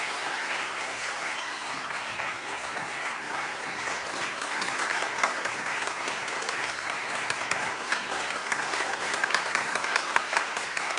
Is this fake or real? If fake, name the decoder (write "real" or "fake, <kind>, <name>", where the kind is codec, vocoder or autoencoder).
fake, codec, SNAC